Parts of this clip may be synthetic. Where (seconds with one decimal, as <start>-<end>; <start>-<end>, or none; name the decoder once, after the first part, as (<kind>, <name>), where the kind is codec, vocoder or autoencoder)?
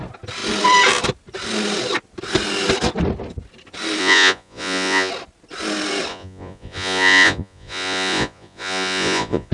4.0-5.1 (vocoder, Vocos); 6.1-9.5